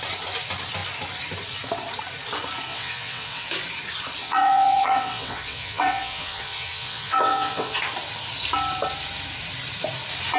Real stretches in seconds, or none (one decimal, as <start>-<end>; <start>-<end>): 0.0-2.7; 3.5-4.2; 7.8-10.4